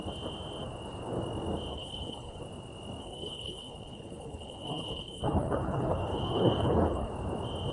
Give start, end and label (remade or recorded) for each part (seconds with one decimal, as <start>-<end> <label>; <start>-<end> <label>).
0.0-1.7 recorded; 1.7-2.4 remade; 2.4-3.0 recorded; 3.0-7.1 remade; 7.1-7.7 recorded